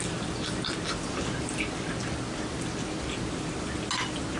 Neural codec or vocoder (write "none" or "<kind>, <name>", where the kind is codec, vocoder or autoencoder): none